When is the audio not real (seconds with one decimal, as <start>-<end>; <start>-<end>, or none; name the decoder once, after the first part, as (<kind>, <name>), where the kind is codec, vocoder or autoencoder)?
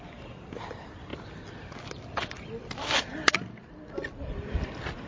none